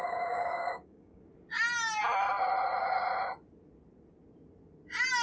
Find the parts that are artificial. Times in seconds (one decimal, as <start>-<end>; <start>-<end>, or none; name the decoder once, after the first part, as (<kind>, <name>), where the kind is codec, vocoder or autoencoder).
0.0-1.2 (codec, DAC)